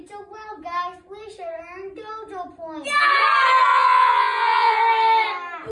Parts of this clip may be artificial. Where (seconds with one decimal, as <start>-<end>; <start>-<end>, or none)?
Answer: 3.7-4.8